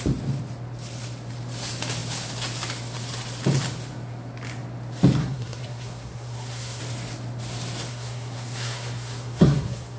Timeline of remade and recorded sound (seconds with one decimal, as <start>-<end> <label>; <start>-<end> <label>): 0.0-5.2 recorded; 5.2-6.8 remade; 6.8-7.9 recorded; 7.9-10.0 remade